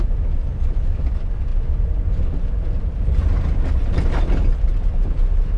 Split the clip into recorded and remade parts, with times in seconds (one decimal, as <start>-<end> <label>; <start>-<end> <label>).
0.0-5.6 recorded